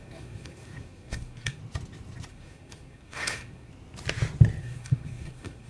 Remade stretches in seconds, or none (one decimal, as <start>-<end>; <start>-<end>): 0.0-1.6; 2.3-3.7; 4.6-5.7